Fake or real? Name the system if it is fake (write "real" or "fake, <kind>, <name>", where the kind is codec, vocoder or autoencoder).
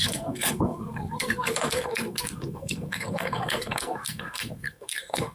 fake, codec, SNAC